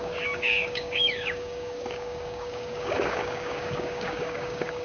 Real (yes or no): no